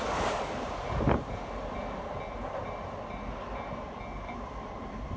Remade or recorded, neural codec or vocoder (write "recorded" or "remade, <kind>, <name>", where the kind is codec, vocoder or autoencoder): recorded